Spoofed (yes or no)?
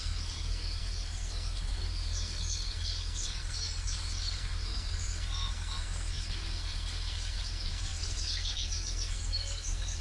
yes